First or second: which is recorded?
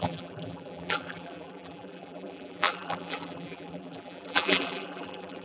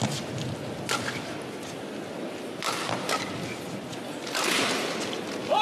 second